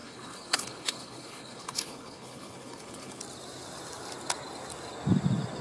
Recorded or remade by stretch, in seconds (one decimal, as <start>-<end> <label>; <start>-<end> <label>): 0.0-3.2 remade; 3.2-5.6 recorded